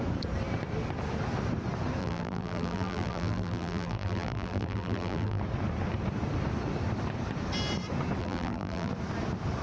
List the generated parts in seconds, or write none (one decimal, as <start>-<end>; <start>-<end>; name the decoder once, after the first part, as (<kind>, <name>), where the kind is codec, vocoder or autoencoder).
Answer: 2.0-5.4 (vocoder, BigVGAN v2); 8.2-8.9